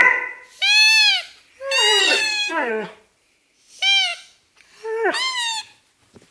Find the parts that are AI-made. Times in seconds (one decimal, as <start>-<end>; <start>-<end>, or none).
2.0-2.7